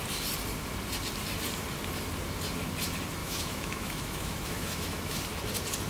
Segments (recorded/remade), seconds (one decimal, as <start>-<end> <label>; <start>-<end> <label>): 0.0-3.2 recorded; 3.2-5.2 remade; 5.2-5.9 recorded